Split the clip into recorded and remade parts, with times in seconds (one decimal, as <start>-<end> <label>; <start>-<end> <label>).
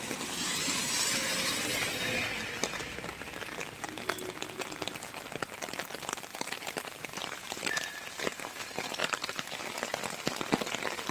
0.0-2.6 recorded; 2.6-4.3 remade; 4.3-6.3 recorded; 6.3-8.2 remade; 8.2-9.0 recorded; 9.0-9.7 remade; 9.7-11.1 recorded